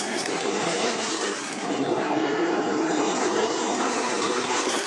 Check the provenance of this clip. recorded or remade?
remade